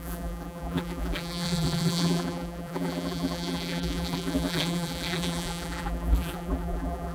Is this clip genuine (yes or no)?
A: no